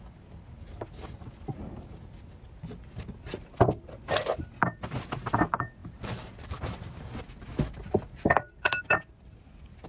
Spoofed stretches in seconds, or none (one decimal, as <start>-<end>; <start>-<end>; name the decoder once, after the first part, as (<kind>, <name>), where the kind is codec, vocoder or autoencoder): none

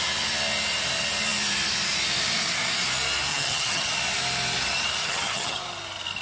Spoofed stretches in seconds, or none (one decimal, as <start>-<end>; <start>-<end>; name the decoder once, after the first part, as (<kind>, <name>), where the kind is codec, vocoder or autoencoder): 3.3-3.9 (vocoder, HiFi-GAN); 5.0-5.6

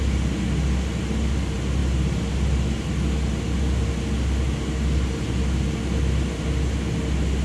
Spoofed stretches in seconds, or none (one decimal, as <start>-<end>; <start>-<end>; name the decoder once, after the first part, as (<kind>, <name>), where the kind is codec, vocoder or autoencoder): none

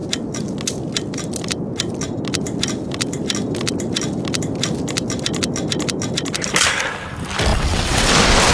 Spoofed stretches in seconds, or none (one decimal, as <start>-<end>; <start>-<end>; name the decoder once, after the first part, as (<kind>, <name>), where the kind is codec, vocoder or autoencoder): 7.5-8.1 (vocoder, WaveNeXt)

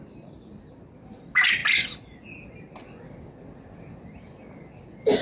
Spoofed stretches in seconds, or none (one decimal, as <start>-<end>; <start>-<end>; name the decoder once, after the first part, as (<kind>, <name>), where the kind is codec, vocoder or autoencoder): none

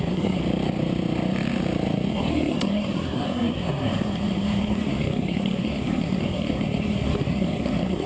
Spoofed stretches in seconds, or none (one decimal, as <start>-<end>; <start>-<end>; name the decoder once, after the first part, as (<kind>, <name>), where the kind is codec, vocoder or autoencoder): 0.0-0.4 (codec, SNAC); 2.1-8.1

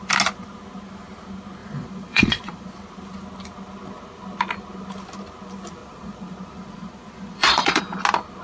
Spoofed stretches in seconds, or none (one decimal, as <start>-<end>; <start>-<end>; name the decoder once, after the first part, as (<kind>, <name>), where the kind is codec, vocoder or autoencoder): 1.6-2.7 (vocoder, Vocos); 5.8-7.8

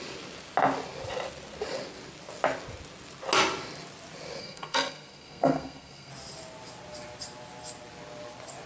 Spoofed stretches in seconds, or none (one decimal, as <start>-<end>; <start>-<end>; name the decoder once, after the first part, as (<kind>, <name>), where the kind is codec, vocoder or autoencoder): 4.4-6.1 (codec, SNAC)